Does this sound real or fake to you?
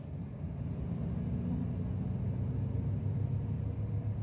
real